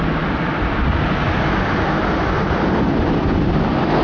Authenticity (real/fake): real